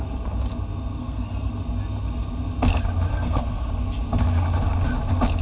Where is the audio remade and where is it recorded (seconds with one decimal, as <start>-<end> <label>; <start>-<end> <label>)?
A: 0.0-1.0 recorded; 1.0-1.5 remade; 1.5-3.1 recorded; 3.1-3.7 remade; 3.7-5.4 recorded